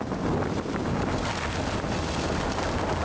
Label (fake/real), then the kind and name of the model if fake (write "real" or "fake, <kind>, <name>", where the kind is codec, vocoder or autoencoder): real